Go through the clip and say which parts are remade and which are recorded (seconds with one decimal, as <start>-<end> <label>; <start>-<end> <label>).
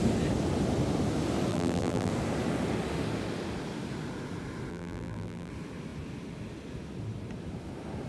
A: 0.0-1.5 recorded; 1.5-2.1 remade; 2.1-4.7 recorded; 4.7-5.5 remade; 5.5-8.1 recorded